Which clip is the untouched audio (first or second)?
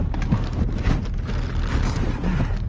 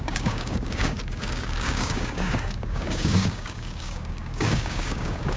first